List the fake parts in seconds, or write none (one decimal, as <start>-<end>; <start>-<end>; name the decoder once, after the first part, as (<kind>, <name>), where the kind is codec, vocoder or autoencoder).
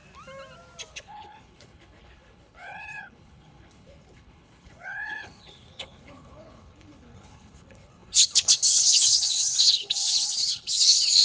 0.9-11.2 (codec, HILCodec)